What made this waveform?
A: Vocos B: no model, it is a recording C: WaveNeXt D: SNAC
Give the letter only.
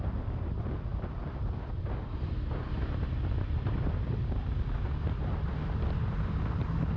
B